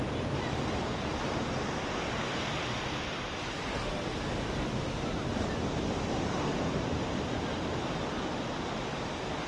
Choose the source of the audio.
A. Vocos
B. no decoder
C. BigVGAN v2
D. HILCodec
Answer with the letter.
B